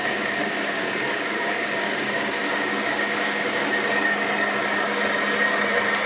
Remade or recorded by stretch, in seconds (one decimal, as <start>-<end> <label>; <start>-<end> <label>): 0.0-3.7 remade; 3.7-6.1 recorded